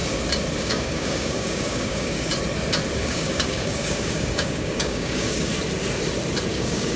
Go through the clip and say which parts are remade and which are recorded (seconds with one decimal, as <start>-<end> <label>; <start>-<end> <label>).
0.0-0.6 recorded; 0.6-2.3 remade; 2.3-2.9 recorded; 2.9-5.5 remade; 5.5-6.5 recorded; 6.5-7.0 remade